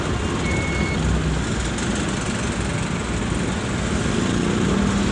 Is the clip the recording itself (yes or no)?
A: yes